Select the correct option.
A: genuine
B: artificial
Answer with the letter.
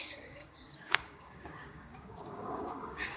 B